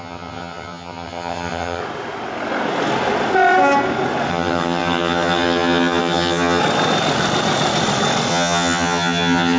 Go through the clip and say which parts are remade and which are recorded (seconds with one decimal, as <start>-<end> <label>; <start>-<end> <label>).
0.0-1.8 remade; 1.8-4.3 recorded; 4.3-6.6 remade; 6.6-8.3 recorded; 8.3-9.6 remade